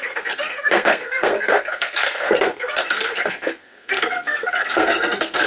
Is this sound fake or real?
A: fake